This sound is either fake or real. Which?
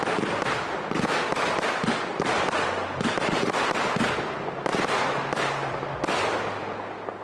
real